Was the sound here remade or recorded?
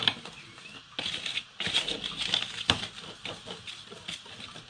recorded